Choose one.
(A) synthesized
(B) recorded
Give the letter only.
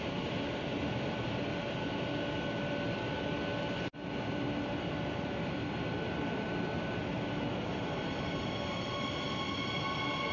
B